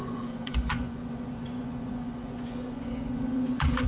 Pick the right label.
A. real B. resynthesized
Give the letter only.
B